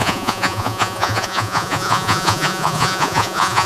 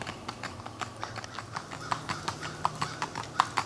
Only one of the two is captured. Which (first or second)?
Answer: second